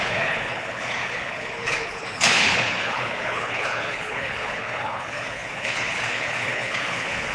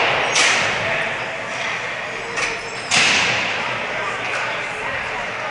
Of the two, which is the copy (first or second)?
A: first